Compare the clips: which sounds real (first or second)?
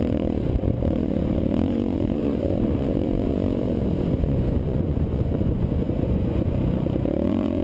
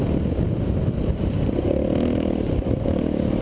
second